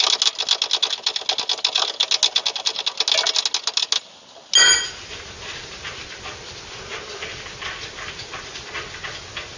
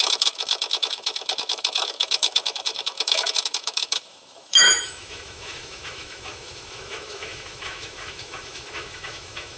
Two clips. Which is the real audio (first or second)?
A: first